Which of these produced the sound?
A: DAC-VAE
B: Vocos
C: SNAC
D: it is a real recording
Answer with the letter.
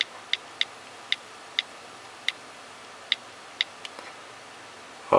D